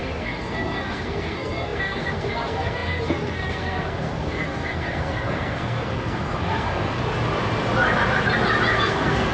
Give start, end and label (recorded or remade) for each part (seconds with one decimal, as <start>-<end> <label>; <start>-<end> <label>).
0.0-7.0 remade; 7.0-8.7 recorded; 8.7-9.3 remade

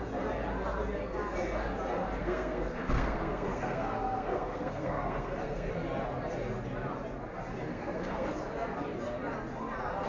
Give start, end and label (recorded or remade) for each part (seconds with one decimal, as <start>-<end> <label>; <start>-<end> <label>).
0.0-2.2 recorded; 2.2-5.7 remade; 5.7-7.7 recorded; 7.7-8.3 remade; 8.3-10.1 recorded

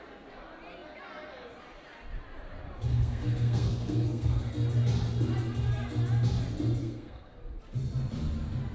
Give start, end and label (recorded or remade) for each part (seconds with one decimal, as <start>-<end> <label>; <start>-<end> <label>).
0.0-2.9 recorded; 2.9-4.5 remade; 4.5-6.8 recorded; 6.8-7.4 remade; 7.4-8.7 recorded

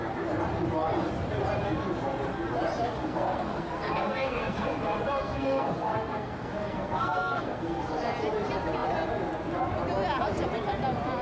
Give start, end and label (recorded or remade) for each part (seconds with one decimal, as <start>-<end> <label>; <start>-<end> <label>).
0.0-3.0 recorded; 3.0-7.9 remade; 7.9-11.2 recorded

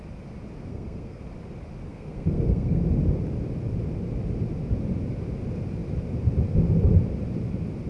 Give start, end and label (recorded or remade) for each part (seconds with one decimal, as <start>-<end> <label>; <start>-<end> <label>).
0.0-0.7 recorded; 0.7-1.2 remade; 1.2-1.8 recorded; 1.8-2.8 remade; 2.8-7.9 recorded

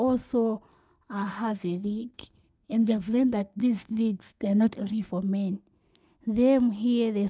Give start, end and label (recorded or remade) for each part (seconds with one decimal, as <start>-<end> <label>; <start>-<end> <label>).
0.0-0.7 recorded; 0.7-5.1 remade; 5.1-7.3 recorded